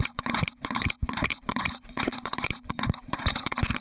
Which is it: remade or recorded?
remade